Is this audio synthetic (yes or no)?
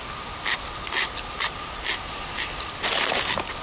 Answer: no